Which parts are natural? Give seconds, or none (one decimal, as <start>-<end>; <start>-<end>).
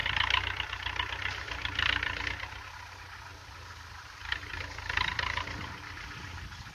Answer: 2.2-3.3; 5.8-6.7